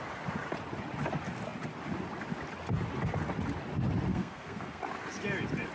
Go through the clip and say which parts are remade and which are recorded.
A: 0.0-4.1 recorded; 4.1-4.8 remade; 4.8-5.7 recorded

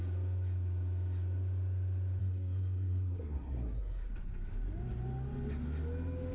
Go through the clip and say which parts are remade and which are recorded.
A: 0.0-2.2 recorded; 2.2-4.1 remade; 4.1-6.3 recorded

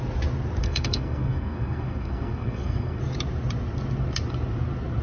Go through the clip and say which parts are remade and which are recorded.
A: 0.0-0.6 recorded; 0.6-3.0 remade; 3.0-5.0 recorded

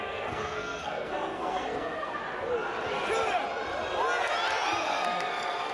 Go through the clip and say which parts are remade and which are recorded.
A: 0.0-2.2 remade; 2.2-4.8 recorded; 4.8-5.7 remade

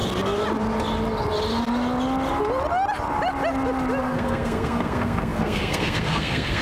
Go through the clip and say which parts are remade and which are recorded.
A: 0.0-4.0 recorded; 4.0-6.6 remade